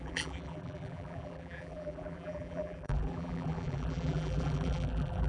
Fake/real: fake